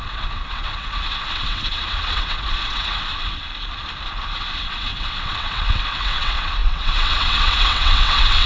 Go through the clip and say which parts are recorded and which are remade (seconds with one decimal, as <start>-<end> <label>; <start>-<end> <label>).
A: 0.0-3.5 remade; 3.5-4.1 recorded; 4.1-8.5 remade